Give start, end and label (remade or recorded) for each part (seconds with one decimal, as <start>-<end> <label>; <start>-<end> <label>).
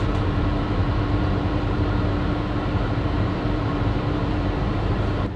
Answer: 0.0-5.4 remade